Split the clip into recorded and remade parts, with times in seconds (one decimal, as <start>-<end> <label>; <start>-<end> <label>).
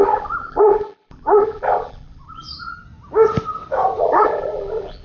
0.0-2.4 remade; 2.4-4.0 recorded; 4.0-5.0 remade